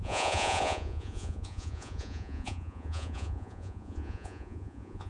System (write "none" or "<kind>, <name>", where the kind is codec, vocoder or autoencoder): vocoder, Vocos